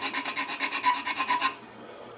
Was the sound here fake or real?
real